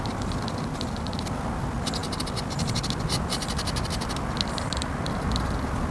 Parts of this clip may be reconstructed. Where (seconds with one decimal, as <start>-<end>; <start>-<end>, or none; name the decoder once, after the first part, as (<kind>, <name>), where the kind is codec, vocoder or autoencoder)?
none